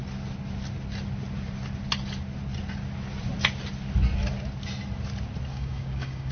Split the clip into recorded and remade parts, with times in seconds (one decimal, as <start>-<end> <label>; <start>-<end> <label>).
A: 0.0-5.5 recorded; 5.5-6.3 remade